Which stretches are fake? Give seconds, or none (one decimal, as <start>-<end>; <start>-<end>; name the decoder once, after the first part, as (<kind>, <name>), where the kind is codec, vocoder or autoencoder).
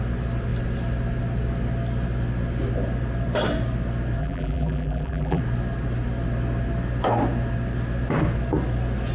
4.2-5.4 (vocoder, BigVGAN v2)